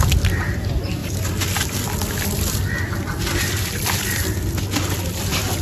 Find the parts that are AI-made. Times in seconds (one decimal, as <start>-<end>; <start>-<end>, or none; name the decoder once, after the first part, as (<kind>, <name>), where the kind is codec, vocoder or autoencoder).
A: none

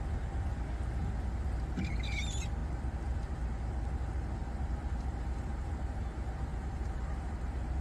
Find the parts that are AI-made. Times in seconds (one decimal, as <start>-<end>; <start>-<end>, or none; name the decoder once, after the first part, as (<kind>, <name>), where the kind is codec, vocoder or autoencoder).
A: 4.4-6.0 (vocoder, BigVGAN v2); 6.5-7.8